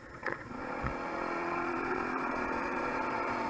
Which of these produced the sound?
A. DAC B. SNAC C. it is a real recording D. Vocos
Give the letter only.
D